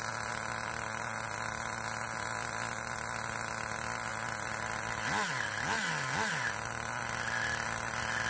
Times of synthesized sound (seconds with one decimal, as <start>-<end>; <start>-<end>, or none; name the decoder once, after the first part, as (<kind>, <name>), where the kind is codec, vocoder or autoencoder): none